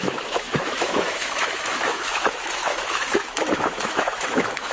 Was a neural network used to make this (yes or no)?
yes